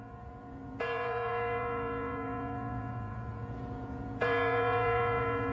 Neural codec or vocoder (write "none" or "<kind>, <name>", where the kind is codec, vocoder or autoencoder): vocoder, Vocos